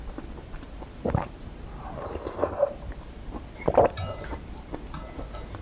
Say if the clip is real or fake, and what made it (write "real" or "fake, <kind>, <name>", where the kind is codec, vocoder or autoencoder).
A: real